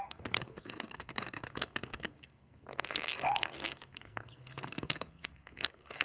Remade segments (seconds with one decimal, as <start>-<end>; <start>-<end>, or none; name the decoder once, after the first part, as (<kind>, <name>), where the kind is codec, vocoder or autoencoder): 0.0-6.0 (codec, SNAC)